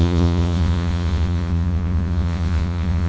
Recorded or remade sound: remade